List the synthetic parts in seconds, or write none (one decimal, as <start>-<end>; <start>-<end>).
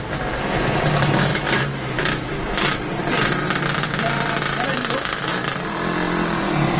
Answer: 1.3-2.8; 4.7-5.3